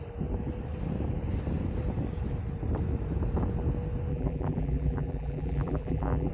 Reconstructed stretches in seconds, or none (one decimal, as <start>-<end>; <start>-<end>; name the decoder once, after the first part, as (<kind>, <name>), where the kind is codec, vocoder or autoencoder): 4.1-6.3 (vocoder, BigVGAN v2)